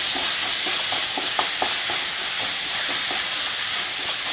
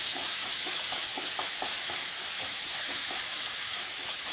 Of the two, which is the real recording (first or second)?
first